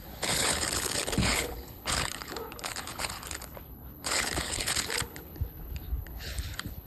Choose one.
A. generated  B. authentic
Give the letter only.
A